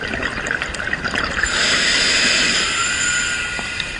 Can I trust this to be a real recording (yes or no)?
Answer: yes